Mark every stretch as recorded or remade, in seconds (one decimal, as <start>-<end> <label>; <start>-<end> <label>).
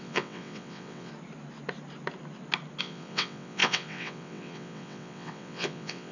0.0-1.1 remade; 1.1-2.8 recorded; 2.8-6.1 remade